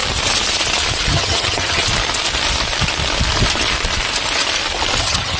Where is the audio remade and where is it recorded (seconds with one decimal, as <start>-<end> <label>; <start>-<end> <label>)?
0.0-1.1 recorded; 1.1-1.8 remade; 1.8-5.0 recorded; 5.0-5.4 remade